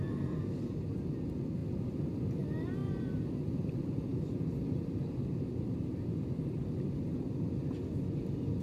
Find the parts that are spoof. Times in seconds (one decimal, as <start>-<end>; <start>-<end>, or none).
2.8-4.5